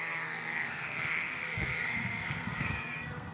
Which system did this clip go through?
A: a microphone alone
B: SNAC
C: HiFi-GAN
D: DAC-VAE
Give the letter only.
B